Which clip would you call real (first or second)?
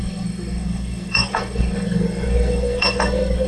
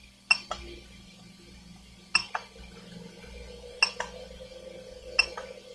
second